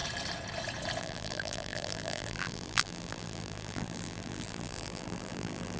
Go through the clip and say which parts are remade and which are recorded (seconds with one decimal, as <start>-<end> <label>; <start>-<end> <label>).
0.0-1.0 recorded; 1.0-5.8 remade